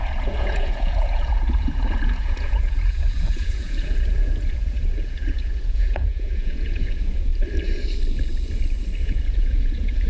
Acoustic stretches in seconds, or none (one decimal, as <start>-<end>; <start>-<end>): 7.3-9.0